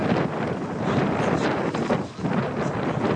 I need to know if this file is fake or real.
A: real